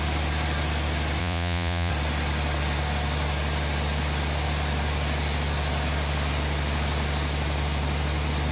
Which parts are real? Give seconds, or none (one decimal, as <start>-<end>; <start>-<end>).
0.0-1.2; 1.9-8.5